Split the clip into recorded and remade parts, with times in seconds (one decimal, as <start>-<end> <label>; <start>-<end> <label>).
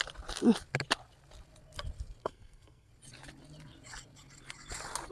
0.0-2.2 recorded; 2.2-2.9 remade; 2.9-5.1 recorded